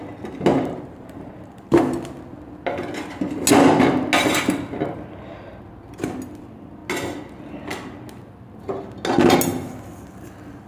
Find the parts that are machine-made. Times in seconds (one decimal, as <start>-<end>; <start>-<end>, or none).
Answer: 0.5-1.8